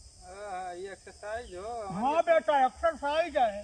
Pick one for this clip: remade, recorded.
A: recorded